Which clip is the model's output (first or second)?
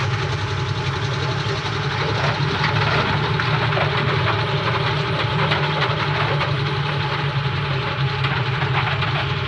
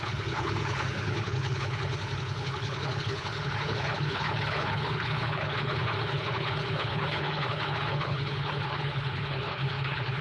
second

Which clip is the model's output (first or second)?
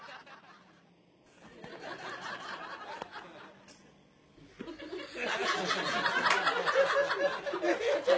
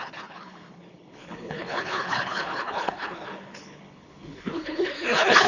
second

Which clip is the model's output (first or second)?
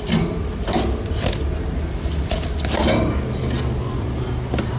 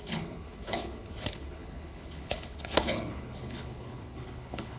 second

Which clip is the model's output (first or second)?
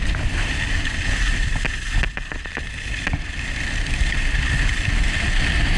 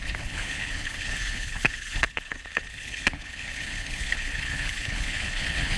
second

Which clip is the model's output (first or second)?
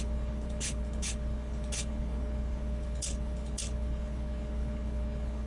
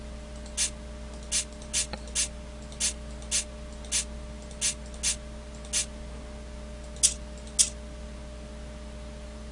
first